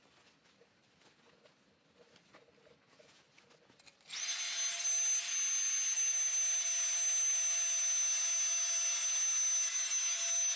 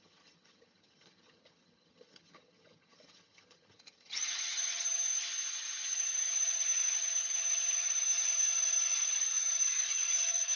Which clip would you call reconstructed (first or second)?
second